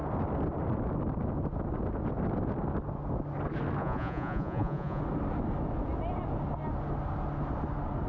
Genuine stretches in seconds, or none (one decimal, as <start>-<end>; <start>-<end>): 0.0-3.8; 5.0-8.1